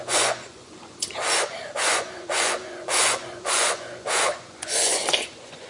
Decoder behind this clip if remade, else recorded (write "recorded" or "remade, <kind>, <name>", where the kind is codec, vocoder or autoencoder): remade, vocoder, Vocos